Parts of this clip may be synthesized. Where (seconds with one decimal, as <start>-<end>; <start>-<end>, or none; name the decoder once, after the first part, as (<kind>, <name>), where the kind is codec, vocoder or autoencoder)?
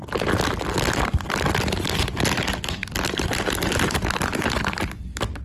none